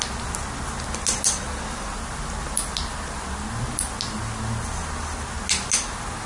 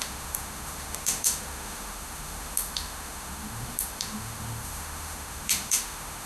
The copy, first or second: second